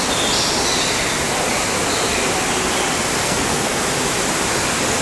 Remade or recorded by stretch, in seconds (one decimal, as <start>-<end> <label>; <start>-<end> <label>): 0.0-3.2 recorded; 3.2-3.8 remade; 3.8-5.0 recorded